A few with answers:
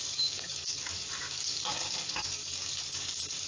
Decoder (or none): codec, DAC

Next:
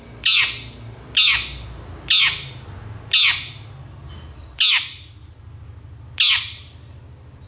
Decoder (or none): none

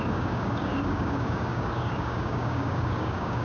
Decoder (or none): codec, DAC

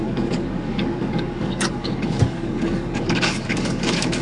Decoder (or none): codec, DAC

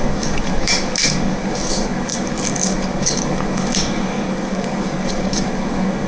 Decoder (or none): codec, DAC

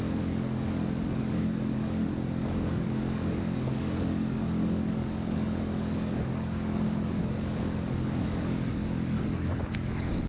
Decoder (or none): codec, DAC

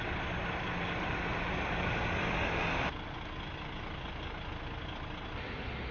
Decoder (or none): none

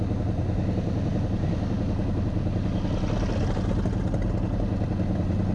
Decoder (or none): none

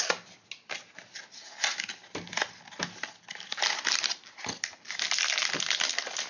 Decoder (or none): none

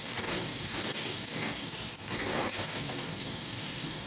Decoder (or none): codec, DAC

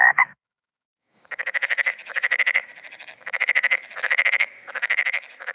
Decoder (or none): codec, DAC